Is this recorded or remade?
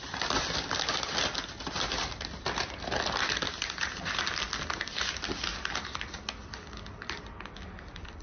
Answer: recorded